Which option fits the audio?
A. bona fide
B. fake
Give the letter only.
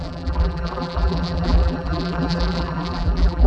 B